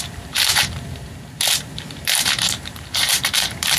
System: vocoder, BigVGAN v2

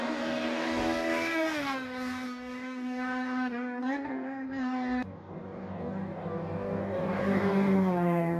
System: codec, DAC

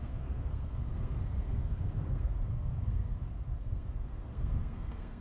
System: codec, SNAC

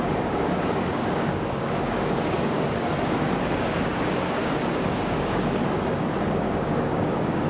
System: codec, DAC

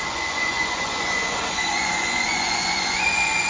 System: vocoder, Vocos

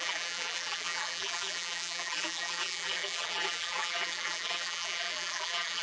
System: vocoder, BigVGAN v2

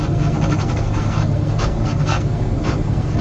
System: codec, SNAC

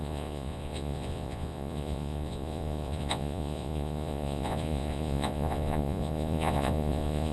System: vocoder, Vocos